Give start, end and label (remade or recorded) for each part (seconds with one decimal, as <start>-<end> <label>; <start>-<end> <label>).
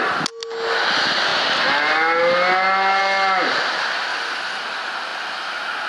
0.0-4.1 recorded; 4.1-4.6 remade; 4.6-5.9 recorded